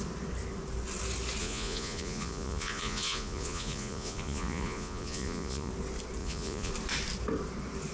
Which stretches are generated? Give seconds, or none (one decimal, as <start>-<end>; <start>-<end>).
1.4-5.7; 6.2-6.7